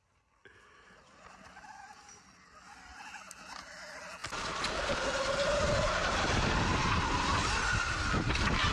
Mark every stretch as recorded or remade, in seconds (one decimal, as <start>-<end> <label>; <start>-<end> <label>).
0.0-8.7 recorded